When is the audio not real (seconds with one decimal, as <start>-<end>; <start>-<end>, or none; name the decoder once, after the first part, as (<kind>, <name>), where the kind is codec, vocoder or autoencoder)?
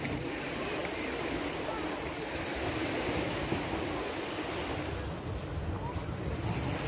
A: none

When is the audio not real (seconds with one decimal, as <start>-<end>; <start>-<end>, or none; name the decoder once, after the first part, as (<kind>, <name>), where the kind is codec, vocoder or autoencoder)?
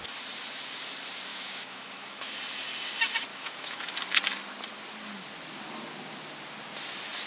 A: 1.3-2.3 (autoencoder, DAC-VAE); 3.3-3.9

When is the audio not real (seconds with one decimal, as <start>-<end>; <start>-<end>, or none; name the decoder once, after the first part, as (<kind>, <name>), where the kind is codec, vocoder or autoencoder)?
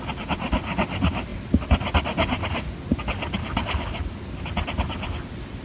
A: none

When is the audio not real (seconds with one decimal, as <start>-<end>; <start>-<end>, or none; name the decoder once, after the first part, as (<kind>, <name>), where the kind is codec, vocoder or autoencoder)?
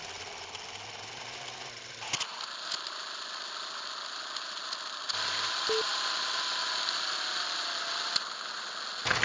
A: none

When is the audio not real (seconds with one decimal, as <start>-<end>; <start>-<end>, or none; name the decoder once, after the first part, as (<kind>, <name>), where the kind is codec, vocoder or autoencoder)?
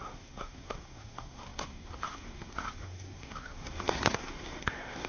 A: 0.0-5.1 (codec, SNAC)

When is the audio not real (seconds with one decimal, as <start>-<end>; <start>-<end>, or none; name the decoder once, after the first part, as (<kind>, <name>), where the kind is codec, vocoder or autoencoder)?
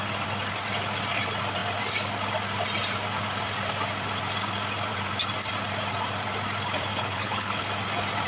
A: 6.9-7.7 (codec, HILCodec)